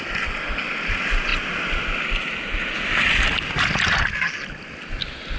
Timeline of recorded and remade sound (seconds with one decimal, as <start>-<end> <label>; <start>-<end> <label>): 0.0-5.4 recorded